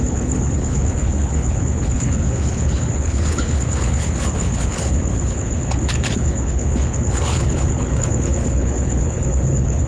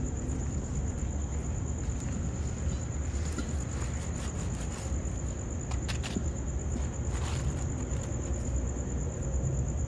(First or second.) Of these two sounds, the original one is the second